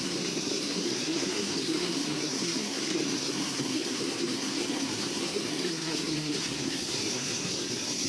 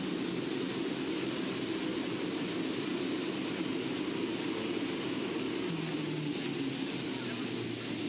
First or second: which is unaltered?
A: second